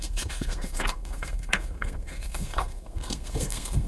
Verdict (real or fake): fake